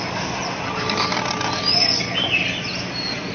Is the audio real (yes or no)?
yes